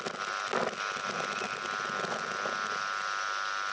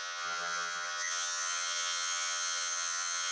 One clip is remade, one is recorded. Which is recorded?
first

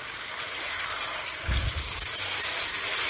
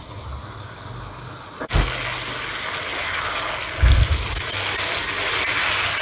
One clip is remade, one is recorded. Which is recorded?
second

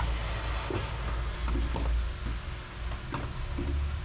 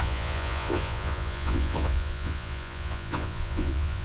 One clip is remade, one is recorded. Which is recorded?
first